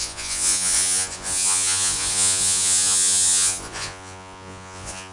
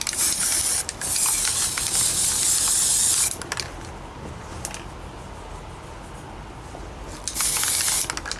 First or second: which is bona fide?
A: second